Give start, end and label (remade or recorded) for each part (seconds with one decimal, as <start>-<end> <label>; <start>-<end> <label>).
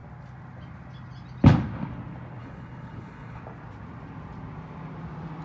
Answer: 0.0-2.4 recorded; 2.4-3.4 remade; 3.4-5.4 recorded